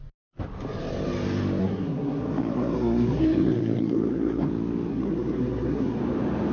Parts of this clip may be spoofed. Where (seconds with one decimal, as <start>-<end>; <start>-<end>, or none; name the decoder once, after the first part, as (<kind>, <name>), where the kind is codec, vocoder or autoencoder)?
1.6-4.5 (codec, SNAC); 4.9-6.0